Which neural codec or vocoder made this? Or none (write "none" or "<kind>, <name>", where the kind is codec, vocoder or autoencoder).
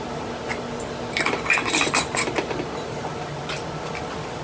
none